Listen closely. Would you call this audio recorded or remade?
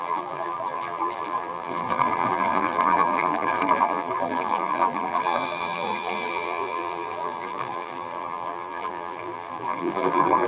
remade